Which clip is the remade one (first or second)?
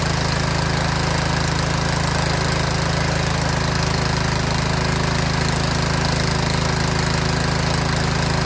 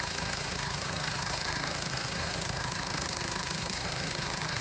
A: second